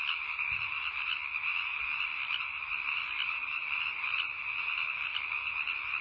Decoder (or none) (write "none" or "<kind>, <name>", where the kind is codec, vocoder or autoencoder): none